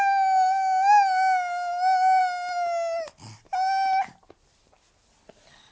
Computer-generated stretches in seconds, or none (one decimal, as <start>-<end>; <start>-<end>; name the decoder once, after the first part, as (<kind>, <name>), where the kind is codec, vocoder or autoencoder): none